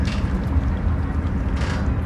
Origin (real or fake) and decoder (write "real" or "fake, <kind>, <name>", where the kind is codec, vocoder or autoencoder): real